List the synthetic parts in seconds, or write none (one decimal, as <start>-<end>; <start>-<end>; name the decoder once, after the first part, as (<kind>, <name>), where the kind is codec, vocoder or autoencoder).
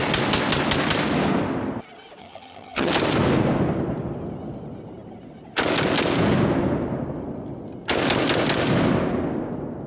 2.2-2.9 (vocoder, HiFi-GAN)